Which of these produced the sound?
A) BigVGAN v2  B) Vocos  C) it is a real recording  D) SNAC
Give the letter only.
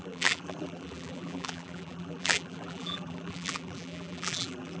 A